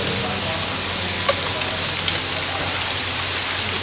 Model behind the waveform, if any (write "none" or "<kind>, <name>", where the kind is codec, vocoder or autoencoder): none